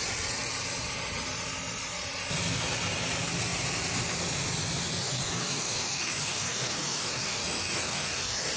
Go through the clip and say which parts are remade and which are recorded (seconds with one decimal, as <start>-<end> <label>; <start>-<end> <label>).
0.0-5.0 recorded; 5.0-8.6 remade